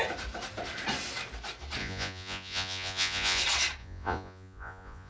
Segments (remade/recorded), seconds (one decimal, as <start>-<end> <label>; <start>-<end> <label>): 0.0-1.8 recorded; 1.8-3.4 remade; 3.4-3.8 recorded; 3.8-5.1 remade